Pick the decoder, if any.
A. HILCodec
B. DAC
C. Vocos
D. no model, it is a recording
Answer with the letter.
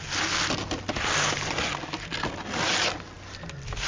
D